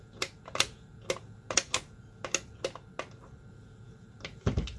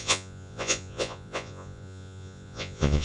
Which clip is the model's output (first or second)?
second